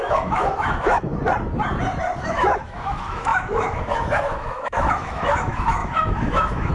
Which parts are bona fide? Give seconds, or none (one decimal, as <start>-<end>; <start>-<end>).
1.1-2.2